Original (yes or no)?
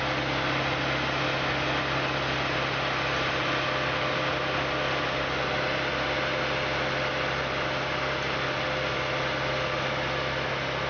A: yes